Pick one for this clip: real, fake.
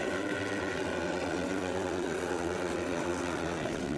fake